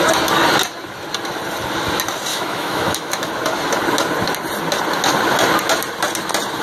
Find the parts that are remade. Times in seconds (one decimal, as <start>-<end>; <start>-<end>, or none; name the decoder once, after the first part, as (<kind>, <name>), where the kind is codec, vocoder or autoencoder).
2.3-3.3 (autoencoder, DAC-VAE)